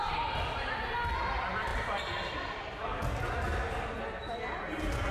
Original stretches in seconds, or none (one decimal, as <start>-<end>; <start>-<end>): 0.0-5.1